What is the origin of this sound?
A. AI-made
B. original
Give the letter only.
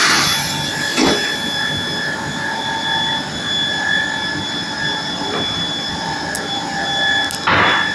B